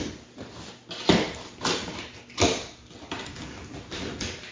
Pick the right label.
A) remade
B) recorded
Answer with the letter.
B